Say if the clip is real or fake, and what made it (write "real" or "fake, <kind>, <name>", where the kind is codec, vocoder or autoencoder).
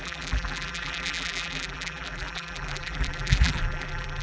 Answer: fake, vocoder, BigVGAN v2